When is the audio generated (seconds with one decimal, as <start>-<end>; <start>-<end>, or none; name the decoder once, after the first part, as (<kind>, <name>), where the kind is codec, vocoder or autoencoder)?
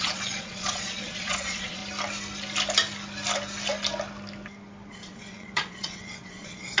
0.0-1.8 (vocoder, Vocos); 4.9-6.8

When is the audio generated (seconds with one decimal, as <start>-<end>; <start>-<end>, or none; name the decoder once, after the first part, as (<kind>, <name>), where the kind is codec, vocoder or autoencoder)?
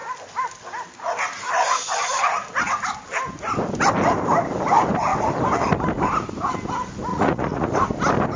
7.1-7.7 (vocoder, Vocos)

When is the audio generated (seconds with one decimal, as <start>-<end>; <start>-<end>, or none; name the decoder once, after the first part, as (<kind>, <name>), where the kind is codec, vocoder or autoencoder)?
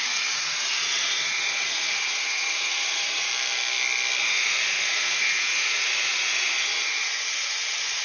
0.0-3.3 (vocoder, Vocos); 4.2-8.0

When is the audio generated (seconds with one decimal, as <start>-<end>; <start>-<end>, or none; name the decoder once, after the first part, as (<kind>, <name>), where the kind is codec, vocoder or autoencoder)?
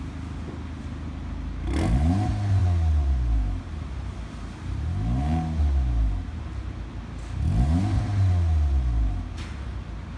none